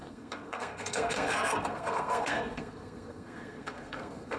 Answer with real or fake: fake